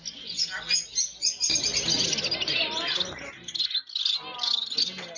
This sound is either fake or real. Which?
real